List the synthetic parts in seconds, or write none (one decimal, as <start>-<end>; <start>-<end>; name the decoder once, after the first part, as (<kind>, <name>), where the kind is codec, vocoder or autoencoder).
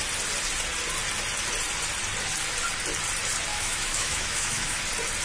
3.5-4.8 (autoencoder, DAC-VAE)